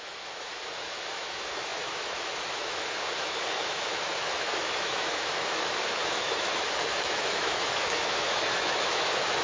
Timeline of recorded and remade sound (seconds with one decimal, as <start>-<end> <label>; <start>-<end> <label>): 0.0-9.4 remade